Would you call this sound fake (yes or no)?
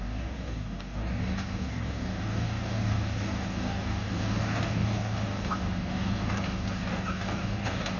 yes